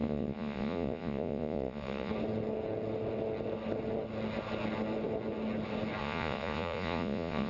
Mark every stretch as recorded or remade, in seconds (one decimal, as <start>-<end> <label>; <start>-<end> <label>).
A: 0.0-2.1 remade; 2.1-6.0 recorded; 6.0-7.5 remade